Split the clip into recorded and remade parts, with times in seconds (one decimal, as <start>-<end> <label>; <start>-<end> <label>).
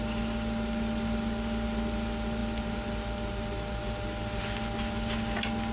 0.0-5.7 recorded